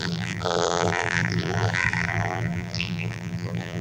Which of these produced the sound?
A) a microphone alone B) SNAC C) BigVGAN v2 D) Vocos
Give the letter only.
C